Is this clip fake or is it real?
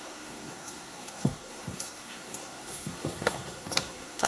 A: fake